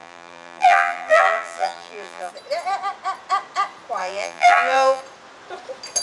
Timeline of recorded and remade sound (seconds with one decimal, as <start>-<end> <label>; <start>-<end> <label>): 0.0-2.3 remade; 2.3-4.0 recorded; 4.0-5.0 remade; 5.0-6.0 recorded